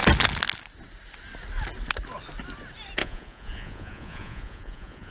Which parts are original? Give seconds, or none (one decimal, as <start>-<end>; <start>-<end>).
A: 0.0-3.0